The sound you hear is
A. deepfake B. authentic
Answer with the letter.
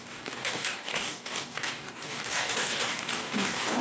A